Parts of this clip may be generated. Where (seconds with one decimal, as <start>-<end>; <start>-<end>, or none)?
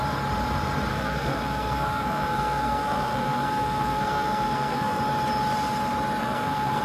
0.9-5.0; 6.2-6.8